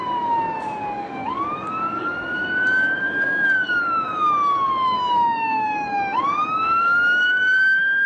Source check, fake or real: fake